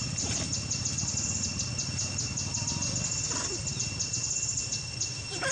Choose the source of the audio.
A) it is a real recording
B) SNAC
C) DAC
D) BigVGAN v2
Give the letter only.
A